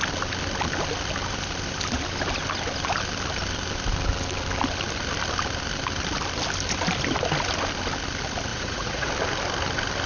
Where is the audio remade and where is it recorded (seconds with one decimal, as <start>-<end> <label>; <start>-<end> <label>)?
0.0-8.5 recorded; 8.5-9.1 remade; 9.1-10.1 recorded